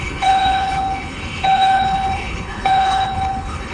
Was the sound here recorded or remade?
remade